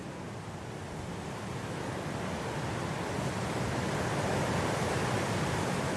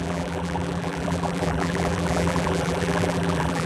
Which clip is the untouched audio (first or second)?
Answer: first